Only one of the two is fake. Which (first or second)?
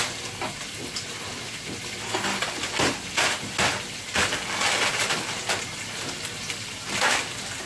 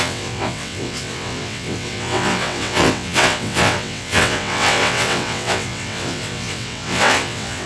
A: second